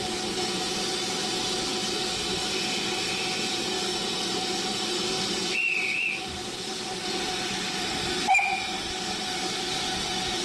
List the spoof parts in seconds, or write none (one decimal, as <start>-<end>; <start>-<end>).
4.7-7.9

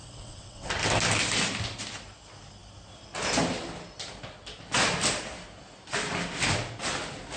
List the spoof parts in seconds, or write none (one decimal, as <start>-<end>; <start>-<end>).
0.0-0.7

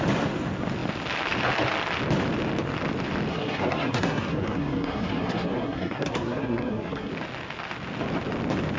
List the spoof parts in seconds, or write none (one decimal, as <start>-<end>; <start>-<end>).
3.3-7.1